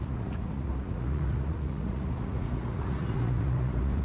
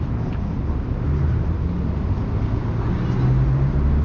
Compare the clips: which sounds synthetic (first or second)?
first